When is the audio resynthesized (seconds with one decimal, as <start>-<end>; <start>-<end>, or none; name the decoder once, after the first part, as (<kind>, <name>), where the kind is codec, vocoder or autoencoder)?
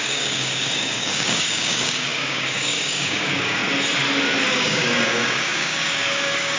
0.0-3.6 (codec, DAC); 4.4-6.6